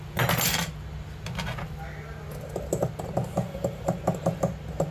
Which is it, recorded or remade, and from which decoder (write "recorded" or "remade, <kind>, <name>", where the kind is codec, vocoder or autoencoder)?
recorded